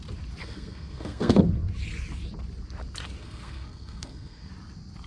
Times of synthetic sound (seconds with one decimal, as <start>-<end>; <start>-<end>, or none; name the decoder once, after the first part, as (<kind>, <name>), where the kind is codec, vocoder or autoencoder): 0.4-1.4 (codec, SNAC); 3.2-4.5